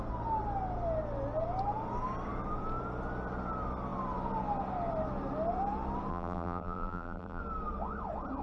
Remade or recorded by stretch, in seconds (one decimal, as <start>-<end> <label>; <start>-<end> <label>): 0.0-6.1 recorded; 6.1-7.4 remade; 7.4-8.4 recorded